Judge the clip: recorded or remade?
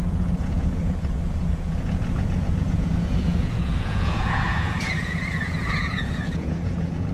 remade